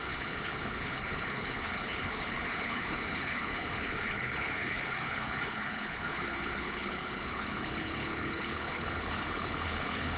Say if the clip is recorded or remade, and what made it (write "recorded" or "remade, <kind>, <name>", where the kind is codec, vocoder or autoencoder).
remade, codec, HILCodec